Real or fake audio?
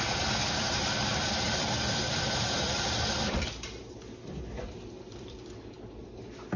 fake